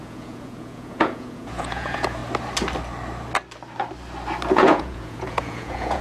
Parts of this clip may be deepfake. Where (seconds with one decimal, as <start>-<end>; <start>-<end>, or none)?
0.0-2.2; 4.5-6.0